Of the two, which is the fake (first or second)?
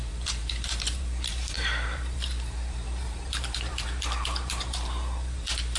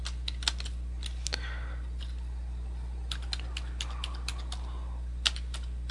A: first